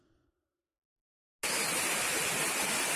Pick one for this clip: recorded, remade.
recorded